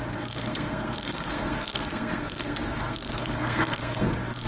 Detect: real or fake fake